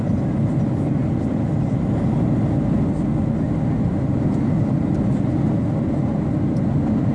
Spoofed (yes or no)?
no